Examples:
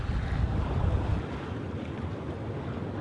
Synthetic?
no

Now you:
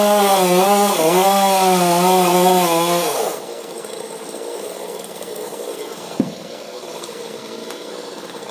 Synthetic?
yes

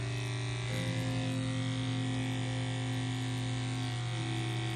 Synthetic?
no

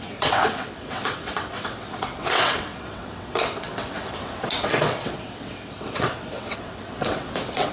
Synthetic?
yes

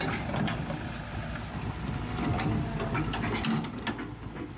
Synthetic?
no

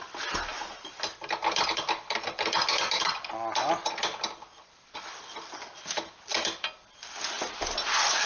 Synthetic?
no